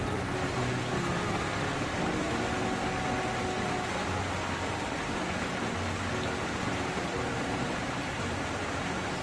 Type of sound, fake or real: real